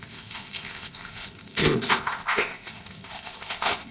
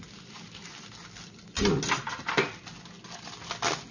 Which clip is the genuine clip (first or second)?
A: second